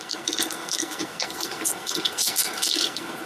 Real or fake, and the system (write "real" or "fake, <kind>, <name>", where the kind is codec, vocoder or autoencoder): fake, codec, SNAC